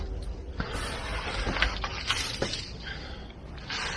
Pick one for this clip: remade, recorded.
recorded